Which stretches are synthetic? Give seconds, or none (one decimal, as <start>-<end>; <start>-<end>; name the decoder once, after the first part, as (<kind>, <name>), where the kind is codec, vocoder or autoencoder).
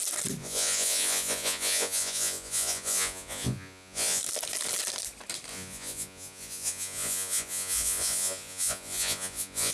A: 0.4-4.2 (vocoder, Vocos); 5.5-9.7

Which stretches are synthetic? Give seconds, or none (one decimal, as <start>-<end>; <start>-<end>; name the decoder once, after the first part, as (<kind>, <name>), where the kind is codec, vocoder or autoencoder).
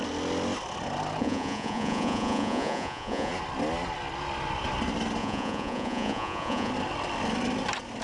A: 1.2-3.3 (vocoder, Vocos); 5.2-6.7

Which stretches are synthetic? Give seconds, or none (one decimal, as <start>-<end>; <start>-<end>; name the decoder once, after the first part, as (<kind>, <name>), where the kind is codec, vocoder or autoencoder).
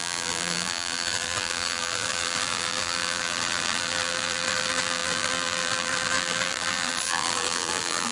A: 0.0-8.1 (vocoder, BigVGAN v2)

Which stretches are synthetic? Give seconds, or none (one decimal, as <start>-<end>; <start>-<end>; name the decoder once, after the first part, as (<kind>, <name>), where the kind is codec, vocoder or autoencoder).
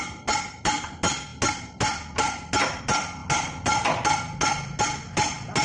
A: none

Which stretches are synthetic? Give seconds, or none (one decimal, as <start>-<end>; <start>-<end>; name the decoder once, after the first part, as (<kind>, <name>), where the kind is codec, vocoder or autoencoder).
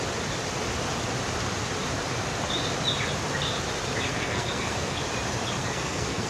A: 4.1-5.0 (codec, SNAC); 5.6-6.3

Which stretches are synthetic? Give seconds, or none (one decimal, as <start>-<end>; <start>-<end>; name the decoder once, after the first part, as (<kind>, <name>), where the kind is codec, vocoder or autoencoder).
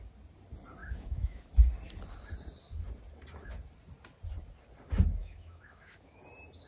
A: 0.8-1.5 (autoencoder, DAC-VAE); 5.2-6.2